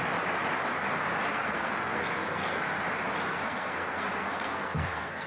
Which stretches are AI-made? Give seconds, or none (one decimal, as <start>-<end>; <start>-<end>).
1.3-2.8; 3.3-5.3